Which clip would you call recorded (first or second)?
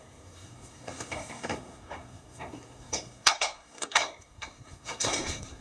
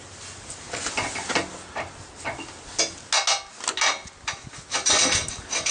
second